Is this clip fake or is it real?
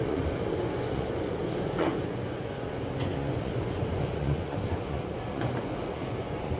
fake